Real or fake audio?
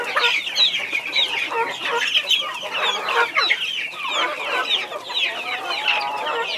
real